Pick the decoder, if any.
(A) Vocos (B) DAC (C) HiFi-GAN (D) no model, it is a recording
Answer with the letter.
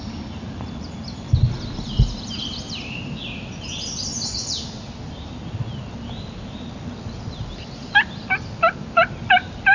D